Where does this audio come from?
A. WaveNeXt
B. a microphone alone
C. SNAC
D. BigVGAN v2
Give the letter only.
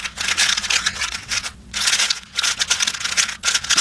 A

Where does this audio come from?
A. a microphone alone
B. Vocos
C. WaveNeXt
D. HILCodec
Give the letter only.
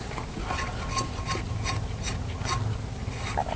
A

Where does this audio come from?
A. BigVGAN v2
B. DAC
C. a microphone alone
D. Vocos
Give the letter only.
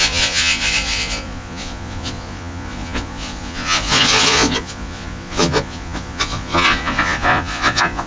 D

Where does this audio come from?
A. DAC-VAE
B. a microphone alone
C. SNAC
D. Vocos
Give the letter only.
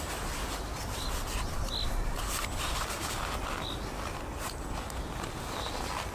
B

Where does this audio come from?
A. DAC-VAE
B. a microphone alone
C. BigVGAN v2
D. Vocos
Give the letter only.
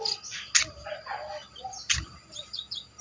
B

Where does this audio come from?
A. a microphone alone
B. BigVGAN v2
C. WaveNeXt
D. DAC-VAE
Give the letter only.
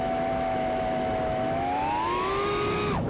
D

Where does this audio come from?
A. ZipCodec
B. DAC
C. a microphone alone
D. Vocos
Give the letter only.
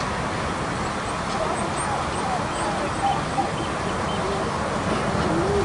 C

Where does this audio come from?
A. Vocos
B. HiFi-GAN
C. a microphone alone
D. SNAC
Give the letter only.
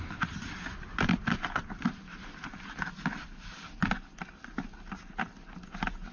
C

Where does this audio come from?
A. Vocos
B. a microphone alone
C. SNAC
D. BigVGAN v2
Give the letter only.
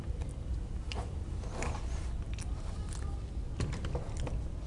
B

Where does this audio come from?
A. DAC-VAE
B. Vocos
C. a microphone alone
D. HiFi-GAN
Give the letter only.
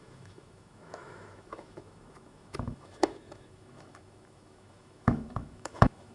A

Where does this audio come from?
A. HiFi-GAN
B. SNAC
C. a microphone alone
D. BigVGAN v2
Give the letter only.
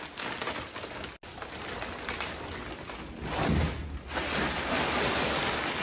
C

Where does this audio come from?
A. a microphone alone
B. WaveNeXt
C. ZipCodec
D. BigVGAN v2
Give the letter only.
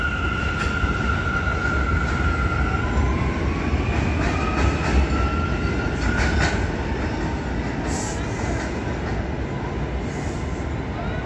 A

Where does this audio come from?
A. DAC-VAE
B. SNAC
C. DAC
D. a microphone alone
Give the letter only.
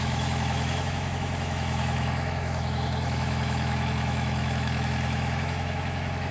A